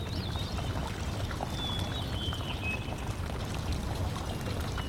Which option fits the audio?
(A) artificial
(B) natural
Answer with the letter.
B